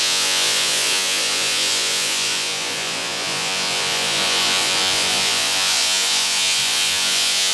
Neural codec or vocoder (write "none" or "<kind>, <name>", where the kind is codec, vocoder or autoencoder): vocoder, Vocos